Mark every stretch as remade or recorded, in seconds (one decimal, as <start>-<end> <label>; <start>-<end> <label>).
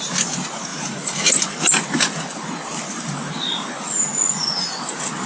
0.0-0.7 recorded; 0.7-1.4 remade; 1.4-4.1 recorded; 4.1-4.7 remade; 4.7-5.3 recorded